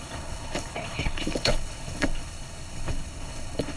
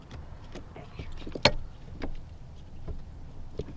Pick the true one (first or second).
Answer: second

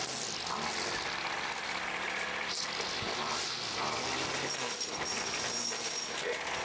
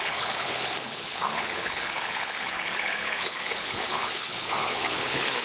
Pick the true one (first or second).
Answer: first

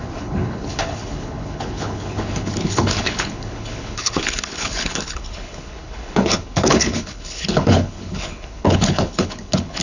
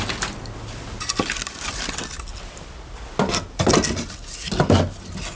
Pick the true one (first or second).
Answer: second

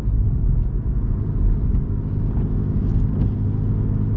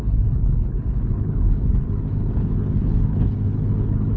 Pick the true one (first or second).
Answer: first